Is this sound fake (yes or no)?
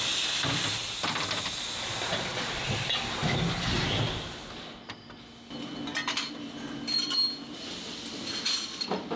no